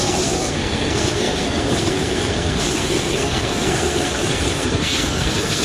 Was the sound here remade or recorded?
remade